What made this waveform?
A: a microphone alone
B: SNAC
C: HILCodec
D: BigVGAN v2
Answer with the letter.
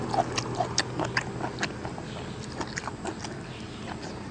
A